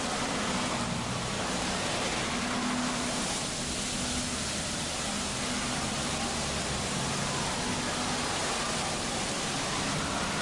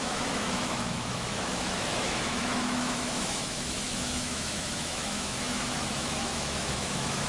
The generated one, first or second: second